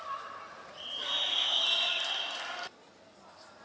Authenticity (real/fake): real